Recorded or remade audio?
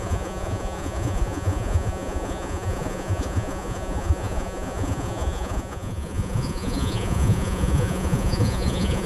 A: remade